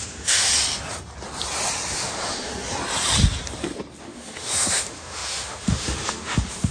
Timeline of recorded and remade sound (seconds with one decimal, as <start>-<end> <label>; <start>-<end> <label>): 0.0-0.5 remade; 0.5-1.9 recorded; 1.9-2.5 remade; 2.5-4.0 recorded; 4.0-6.7 remade